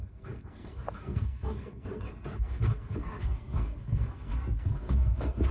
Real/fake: fake